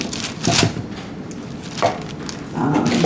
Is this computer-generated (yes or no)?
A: no